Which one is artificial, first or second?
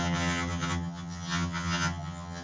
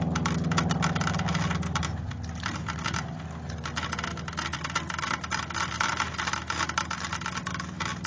first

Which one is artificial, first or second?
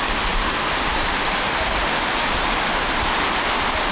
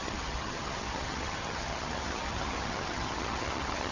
second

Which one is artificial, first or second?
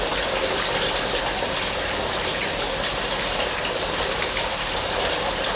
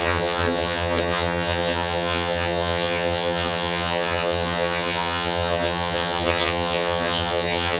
second